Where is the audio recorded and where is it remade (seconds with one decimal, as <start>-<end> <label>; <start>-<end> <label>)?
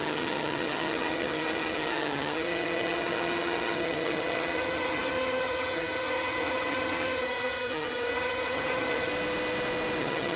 0.0-9.1 remade; 9.1-10.0 recorded; 10.0-10.4 remade